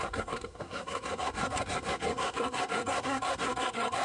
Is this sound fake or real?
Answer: fake